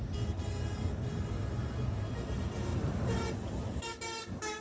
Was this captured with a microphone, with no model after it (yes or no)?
yes